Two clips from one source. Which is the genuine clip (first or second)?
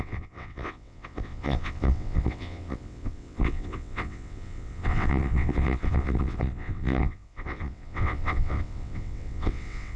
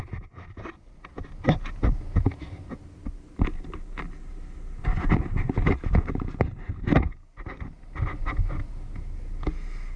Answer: second